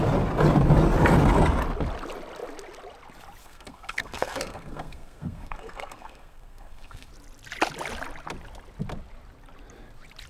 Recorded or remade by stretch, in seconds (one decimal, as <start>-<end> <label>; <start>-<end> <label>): 0.0-3.4 recorded; 3.4-7.1 remade; 7.1-10.3 recorded